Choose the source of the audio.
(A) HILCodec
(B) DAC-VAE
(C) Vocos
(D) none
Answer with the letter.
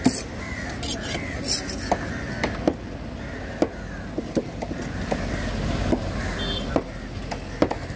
D